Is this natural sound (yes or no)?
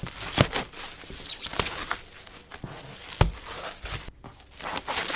yes